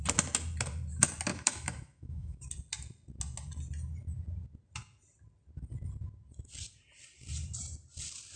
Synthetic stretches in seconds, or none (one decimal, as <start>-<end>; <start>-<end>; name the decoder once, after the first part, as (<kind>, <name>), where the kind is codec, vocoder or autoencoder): 1.3-2.4 (autoencoder, DAC-VAE)